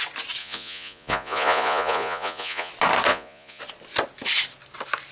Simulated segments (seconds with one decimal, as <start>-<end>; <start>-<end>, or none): 0.4-2.7; 3.1-3.6

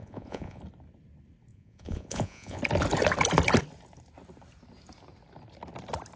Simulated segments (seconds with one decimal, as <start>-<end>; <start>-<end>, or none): 0.0-0.6; 1.5-2.6

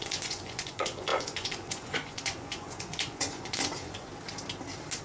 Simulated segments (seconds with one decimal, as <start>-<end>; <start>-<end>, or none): 0.0-4.1